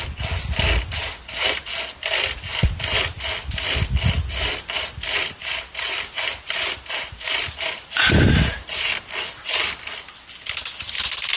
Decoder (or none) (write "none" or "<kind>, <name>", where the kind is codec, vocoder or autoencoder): none